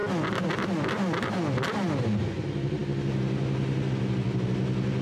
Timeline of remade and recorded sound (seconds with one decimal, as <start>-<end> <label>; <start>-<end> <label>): 0.0-5.0 recorded